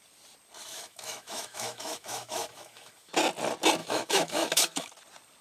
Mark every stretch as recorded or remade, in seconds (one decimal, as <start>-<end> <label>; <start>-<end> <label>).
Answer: 0.0-0.6 recorded; 0.6-3.1 remade; 3.1-3.8 recorded; 3.8-4.9 remade; 4.9-5.4 recorded